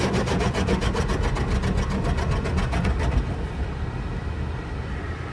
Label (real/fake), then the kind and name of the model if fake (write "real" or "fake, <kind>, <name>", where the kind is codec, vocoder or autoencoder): real